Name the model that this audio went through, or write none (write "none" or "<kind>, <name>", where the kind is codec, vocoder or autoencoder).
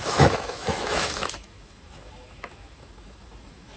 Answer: autoencoder, DAC-VAE